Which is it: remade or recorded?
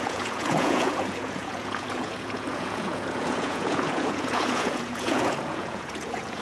remade